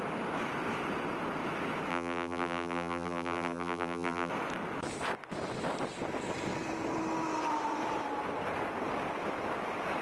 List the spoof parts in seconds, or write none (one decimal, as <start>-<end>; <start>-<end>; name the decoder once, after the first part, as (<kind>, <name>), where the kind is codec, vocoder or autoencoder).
1.9-4.3 (vocoder, BigVGAN v2)